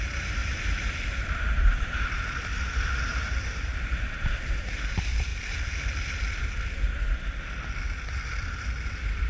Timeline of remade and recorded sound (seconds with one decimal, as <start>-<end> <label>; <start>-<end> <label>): 0.0-0.4 remade; 0.4-1.3 recorded; 1.3-2.5 remade; 2.5-3.1 recorded; 3.1-5.3 remade; 5.3-9.3 recorded